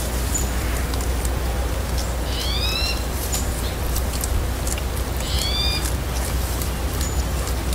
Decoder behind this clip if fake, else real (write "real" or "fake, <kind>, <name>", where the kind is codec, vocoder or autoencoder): real